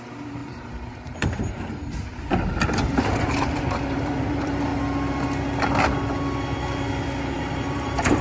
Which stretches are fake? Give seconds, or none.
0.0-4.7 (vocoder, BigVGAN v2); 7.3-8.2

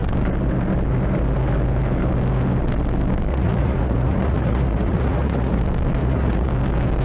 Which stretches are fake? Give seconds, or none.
3.3-5.6 (vocoder, Vocos); 6.0-6.5

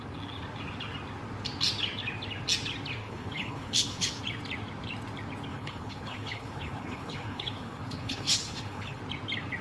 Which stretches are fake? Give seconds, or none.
3.0-4.2 (codec, HILCodec); 5.5-9.0

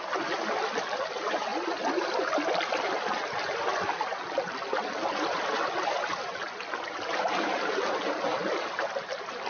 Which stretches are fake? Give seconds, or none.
none

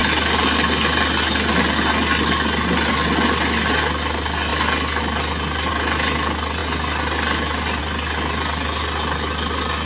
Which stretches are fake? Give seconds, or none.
none

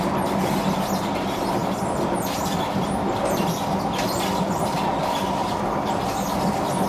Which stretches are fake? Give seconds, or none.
none

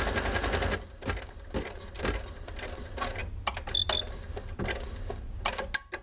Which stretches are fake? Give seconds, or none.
none

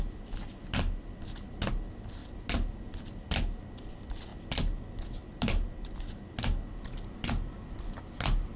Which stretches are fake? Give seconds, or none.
none